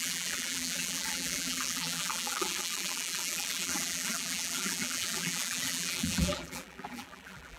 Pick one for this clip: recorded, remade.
remade